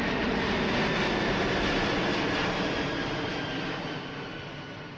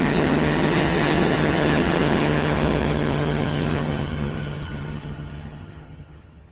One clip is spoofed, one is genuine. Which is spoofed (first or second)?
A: second